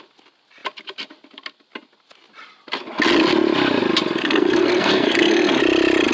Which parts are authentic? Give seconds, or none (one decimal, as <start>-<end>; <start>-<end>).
0.0-4.2; 5.6-6.1